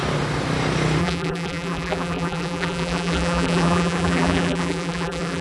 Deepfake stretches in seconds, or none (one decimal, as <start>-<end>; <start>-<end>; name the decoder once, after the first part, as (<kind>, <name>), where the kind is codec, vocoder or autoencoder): 1.0-5.4 (vocoder, BigVGAN v2)